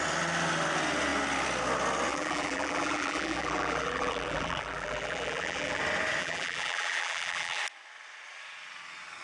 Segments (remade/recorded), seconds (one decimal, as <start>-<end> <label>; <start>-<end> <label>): 0.0-2.1 recorded; 2.1-5.8 remade; 5.8-6.2 recorded; 6.2-7.6 remade; 7.6-9.2 recorded